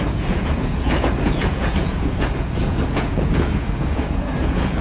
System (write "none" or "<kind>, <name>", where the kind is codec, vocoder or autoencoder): vocoder, Vocos